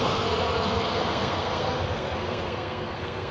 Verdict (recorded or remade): remade